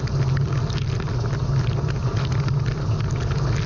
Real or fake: real